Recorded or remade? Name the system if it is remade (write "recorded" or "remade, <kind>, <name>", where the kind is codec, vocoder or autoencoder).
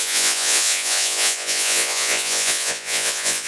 remade, vocoder, Vocos